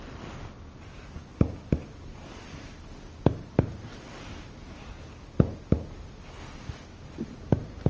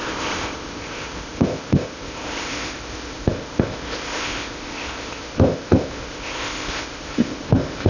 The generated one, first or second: second